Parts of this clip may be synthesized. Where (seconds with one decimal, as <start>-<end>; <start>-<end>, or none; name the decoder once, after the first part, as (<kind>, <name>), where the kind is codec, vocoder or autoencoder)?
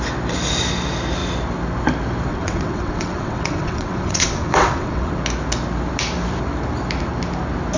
2.3-5.1 (vocoder, WaveNeXt)